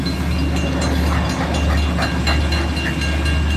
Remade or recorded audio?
recorded